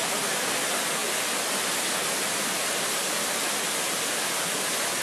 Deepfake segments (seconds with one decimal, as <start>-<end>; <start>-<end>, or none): none